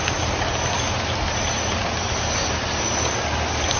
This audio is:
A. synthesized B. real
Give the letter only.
B